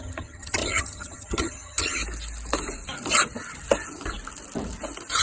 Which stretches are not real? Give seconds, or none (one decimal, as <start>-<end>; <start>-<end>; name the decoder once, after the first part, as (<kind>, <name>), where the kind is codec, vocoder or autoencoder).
0.0-2.0 (vocoder, HiFi-GAN)